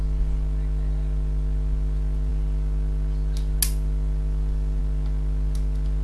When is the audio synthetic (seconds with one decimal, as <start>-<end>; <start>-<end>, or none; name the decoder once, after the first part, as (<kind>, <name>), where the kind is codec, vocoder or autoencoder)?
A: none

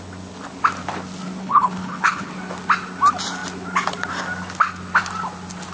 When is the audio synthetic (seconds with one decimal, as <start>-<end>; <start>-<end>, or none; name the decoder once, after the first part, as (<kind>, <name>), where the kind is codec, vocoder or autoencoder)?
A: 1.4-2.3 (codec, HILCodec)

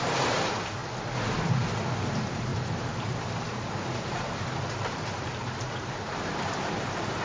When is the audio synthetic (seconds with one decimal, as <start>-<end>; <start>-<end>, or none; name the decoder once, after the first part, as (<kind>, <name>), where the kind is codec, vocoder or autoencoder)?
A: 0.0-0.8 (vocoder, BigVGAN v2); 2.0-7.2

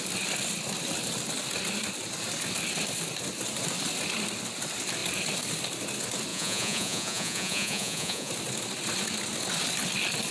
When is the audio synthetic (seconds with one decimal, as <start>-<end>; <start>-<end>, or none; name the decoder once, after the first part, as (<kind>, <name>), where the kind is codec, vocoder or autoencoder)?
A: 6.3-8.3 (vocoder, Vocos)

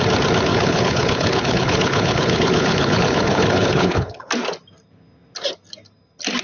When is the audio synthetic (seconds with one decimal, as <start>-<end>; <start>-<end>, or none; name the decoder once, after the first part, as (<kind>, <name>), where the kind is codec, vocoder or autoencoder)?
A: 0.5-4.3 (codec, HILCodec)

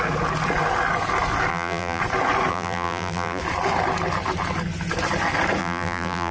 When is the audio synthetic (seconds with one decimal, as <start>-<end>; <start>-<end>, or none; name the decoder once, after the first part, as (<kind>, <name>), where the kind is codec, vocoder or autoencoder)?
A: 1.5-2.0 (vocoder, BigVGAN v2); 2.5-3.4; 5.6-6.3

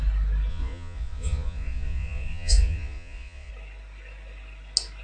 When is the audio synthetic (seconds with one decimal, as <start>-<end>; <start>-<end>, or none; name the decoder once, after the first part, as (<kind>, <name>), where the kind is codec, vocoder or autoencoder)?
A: 0.5-3.5 (vocoder, Vocos)